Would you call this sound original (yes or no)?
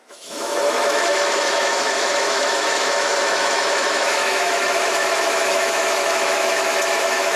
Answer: no